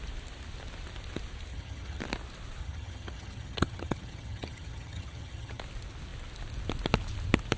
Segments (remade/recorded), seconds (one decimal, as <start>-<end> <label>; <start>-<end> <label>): 0.0-1.5 recorded; 1.5-2.0 remade; 2.0-2.6 recorded; 2.6-5.6 remade; 5.6-7.6 recorded